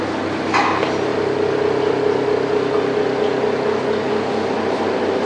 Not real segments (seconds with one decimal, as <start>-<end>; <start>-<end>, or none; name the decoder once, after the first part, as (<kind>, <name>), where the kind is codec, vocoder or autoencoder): none